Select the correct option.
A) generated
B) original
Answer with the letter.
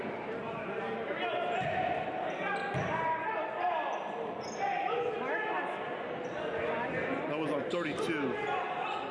B